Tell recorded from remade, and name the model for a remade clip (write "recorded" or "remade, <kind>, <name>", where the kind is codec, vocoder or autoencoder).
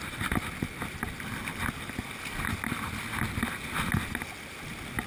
recorded